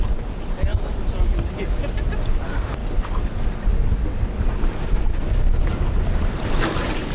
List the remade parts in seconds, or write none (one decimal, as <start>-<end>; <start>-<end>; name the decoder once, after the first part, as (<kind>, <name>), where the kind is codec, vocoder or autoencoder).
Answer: none